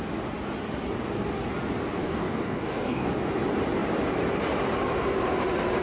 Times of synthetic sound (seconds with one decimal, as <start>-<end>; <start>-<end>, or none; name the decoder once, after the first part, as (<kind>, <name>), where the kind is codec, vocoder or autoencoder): 2.0-3.1 (codec, DAC)

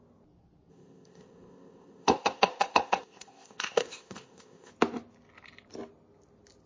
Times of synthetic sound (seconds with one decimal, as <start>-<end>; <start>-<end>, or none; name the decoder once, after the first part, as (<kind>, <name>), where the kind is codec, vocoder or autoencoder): 0.7-4.7 (codec, ZipCodec)